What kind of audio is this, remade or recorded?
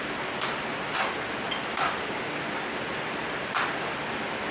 recorded